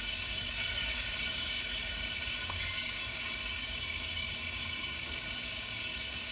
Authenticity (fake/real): fake